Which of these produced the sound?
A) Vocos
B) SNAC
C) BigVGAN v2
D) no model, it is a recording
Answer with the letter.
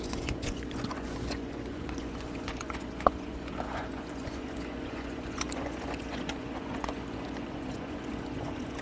A